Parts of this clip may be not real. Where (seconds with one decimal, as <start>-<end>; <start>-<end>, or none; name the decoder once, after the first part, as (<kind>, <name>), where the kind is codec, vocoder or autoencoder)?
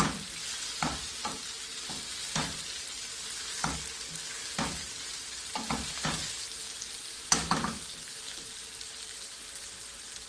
7.1-7.8 (autoencoder, DAC-VAE)